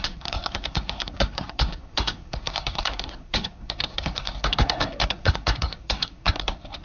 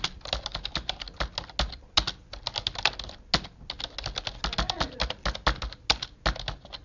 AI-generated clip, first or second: first